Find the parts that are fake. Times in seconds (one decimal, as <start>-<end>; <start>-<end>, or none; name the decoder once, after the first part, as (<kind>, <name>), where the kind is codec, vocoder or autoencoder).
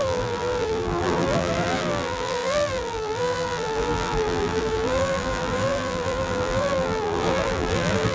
0.0-8.1 (vocoder, BigVGAN v2)